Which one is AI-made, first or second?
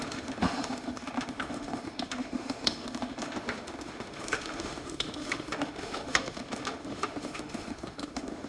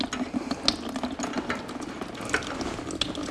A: first